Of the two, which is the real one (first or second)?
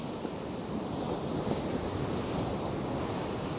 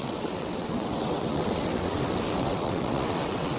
first